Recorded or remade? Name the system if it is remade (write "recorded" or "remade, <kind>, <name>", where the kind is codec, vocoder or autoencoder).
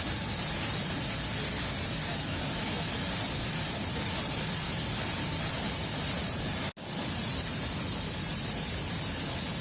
recorded